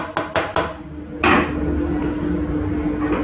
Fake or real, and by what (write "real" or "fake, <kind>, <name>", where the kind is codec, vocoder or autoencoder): real